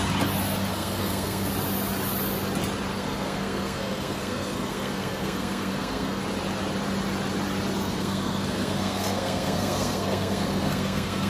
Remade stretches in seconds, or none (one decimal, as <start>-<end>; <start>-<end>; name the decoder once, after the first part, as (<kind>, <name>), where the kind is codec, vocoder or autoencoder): 0.7-1.5 (codec, SNAC); 2.9-6.2; 7.8-11.3